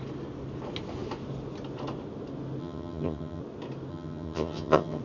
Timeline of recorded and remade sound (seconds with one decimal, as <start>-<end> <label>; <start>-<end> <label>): 0.0-2.6 recorded; 2.6-3.4 remade; 3.4-3.9 recorded; 3.9-5.0 remade